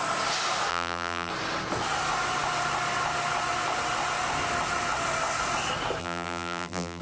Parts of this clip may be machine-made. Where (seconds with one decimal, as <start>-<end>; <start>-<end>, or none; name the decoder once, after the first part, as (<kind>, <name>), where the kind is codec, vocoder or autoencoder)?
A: 0.7-1.3 (vocoder, BigVGAN v2); 6.0-7.0